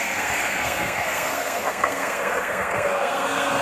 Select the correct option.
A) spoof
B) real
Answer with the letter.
A